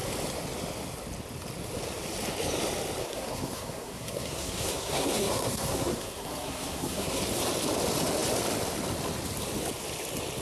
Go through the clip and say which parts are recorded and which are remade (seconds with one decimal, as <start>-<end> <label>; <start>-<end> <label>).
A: 0.0-3.0 recorded; 3.0-7.2 remade; 7.2-10.4 recorded